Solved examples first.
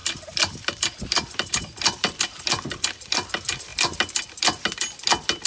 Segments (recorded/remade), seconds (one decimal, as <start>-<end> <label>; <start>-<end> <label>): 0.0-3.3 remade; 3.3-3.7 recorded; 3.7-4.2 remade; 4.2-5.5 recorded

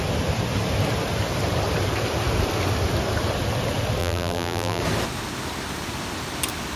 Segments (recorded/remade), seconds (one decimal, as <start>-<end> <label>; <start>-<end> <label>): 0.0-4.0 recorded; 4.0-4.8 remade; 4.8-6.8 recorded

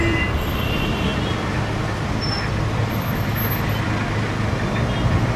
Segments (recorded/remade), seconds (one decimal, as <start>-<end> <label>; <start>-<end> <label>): 0.0-1.1 remade; 1.1-2.6 recorded; 2.6-3.3 remade; 3.3-5.4 recorded